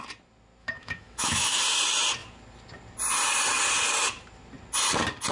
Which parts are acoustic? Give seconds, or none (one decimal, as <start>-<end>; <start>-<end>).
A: 0.0-0.6; 1.6-5.3